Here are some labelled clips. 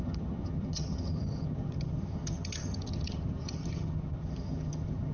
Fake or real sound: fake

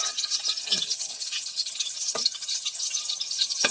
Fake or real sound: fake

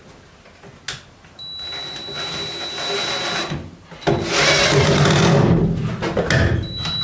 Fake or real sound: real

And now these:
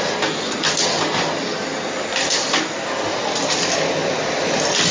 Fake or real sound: real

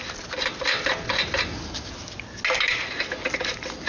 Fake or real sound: real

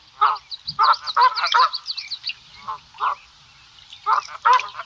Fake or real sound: real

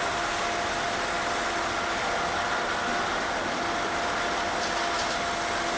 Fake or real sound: real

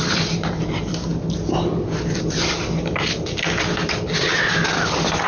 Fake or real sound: real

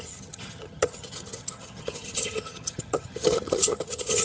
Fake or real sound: fake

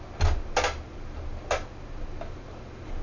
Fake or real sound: real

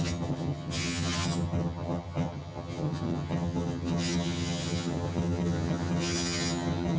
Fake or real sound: fake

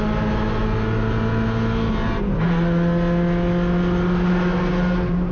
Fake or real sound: real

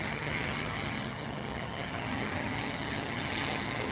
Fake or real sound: fake